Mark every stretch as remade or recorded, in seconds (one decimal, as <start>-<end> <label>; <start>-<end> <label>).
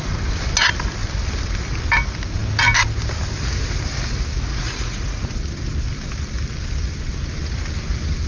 0.0-4.5 recorded; 4.5-5.3 remade; 5.3-8.3 recorded